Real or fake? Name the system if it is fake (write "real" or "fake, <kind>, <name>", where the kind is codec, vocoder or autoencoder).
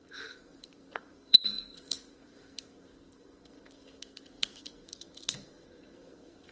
fake, codec, SNAC